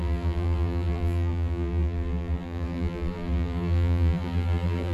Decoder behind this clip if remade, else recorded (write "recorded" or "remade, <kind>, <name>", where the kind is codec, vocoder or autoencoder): remade, vocoder, BigVGAN v2